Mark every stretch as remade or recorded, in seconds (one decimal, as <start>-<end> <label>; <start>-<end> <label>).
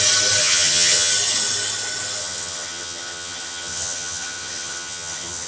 0.0-0.4 recorded; 0.4-1.1 remade; 1.1-2.2 recorded; 2.2-5.5 remade